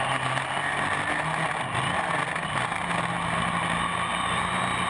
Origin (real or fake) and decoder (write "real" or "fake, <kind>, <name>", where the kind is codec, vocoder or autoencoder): real